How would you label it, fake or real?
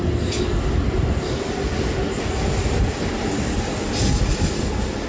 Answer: real